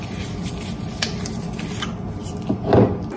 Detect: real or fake real